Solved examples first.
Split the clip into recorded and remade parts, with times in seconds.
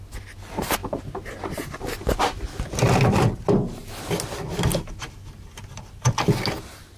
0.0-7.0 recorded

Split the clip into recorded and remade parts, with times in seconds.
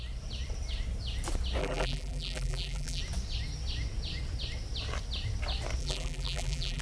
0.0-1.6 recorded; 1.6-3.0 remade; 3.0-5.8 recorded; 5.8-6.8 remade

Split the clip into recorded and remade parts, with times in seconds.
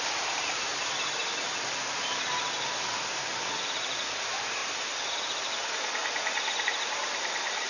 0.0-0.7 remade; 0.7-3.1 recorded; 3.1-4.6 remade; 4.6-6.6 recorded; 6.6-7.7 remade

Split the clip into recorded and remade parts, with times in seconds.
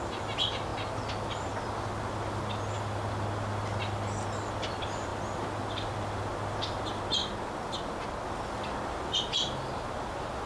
0.0-0.7 remade; 0.7-2.1 recorded; 2.1-7.2 remade; 7.2-8.4 recorded; 8.4-10.5 remade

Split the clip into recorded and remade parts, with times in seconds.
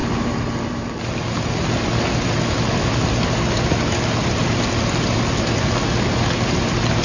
0.0-0.9 remade; 0.9-7.0 recorded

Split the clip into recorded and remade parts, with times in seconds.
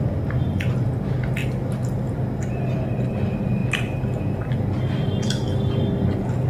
0.0-1.4 recorded; 1.4-2.5 remade; 2.5-6.5 recorded